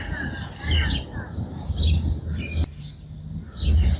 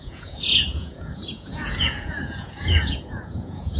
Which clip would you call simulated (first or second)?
second